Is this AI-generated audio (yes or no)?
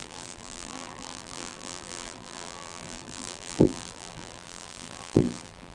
yes